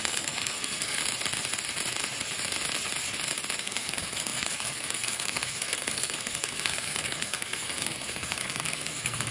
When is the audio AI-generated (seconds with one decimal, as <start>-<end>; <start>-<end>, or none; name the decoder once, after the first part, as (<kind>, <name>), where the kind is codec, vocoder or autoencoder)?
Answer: 0.0-1.0 (codec, SNAC); 3.6-9.3